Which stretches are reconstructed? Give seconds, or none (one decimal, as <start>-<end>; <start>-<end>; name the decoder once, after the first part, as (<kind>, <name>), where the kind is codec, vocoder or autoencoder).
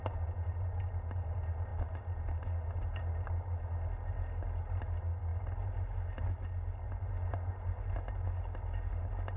none